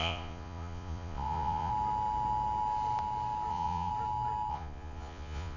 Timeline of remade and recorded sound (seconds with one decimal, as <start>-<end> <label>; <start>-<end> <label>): 0.0-1.7 remade; 1.7-3.5 recorded; 3.5-3.9 remade; 3.9-4.5 recorded; 4.5-5.6 remade

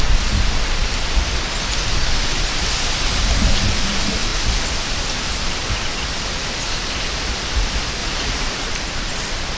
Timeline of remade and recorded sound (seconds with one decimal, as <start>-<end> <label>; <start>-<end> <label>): 0.0-8.0 recorded; 8.0-8.7 remade; 8.7-9.6 recorded

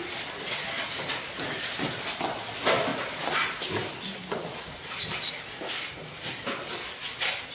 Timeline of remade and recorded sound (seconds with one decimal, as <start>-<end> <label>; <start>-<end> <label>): 0.0-7.5 recorded